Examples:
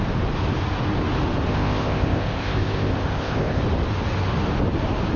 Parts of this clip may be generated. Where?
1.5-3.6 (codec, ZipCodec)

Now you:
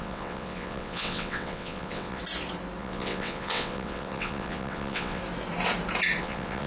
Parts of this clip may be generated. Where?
0.0-2.2 (vocoder, WaveNeXt); 2.8-5.2; 6.2-6.7

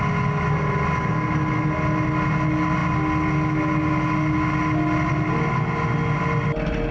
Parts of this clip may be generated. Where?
none

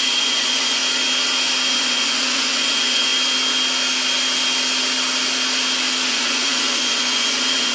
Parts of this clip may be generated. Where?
0.0-0.8 (vocoder, Vocos); 1.7-3.1; 6.1-7.7

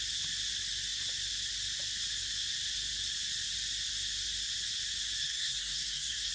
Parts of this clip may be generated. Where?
5.2-6.3 (codec, SNAC)

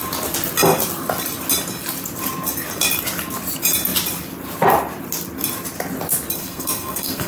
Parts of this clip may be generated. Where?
6.4-7.3 (codec, SNAC)

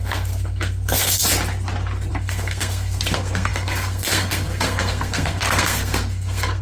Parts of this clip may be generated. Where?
0.0-1.2 (codec, SNAC); 2.1-6.6

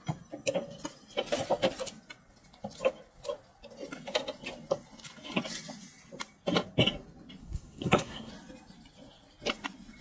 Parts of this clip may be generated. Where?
7.4-8.3 (codec, SNAC)